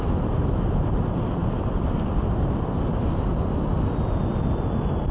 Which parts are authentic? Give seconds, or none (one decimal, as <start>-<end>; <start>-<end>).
0.0-1.4; 3.1-5.1